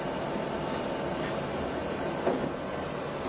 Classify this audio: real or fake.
real